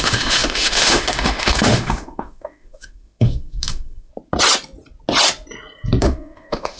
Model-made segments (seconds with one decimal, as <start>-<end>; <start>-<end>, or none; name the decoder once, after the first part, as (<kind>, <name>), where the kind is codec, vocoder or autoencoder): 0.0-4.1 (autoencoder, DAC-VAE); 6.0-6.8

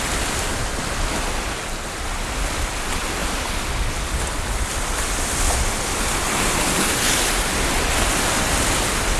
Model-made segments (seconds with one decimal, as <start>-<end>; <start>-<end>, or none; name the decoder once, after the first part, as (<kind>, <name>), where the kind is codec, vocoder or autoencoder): none

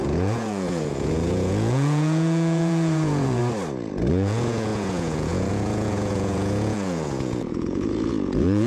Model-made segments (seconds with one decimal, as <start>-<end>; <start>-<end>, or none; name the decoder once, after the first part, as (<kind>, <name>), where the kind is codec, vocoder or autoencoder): 0.0-3.4 (vocoder, Vocos); 4.1-8.7

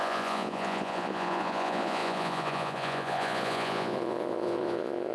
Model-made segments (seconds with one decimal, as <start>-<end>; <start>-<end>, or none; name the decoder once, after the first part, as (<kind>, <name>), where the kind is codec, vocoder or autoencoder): 0.0-5.1 (vocoder, Vocos)

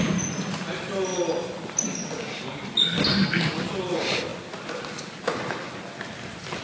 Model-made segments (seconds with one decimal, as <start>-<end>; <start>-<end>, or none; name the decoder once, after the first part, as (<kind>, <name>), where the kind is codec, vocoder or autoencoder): none

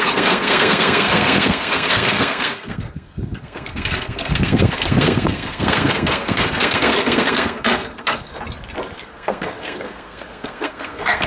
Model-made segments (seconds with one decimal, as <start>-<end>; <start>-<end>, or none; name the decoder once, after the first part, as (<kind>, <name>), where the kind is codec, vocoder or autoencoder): 0.0-8.3 (codec, SNAC); 9.0-11.3

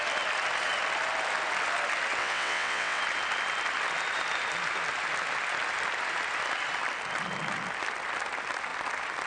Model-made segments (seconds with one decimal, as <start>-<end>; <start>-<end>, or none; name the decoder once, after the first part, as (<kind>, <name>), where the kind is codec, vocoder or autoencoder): 2.2-3.0 (vocoder, WaveNeXt)